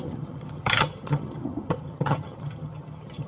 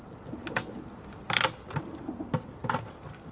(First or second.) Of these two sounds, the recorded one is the second